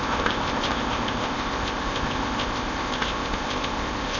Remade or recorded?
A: remade